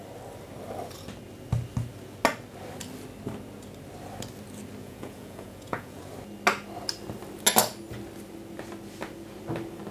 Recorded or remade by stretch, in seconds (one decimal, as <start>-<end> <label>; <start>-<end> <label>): 0.0-4.8 recorded; 4.8-6.0 remade; 6.0-9.9 recorded